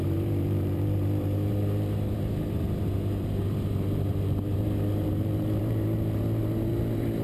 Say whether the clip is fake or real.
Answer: fake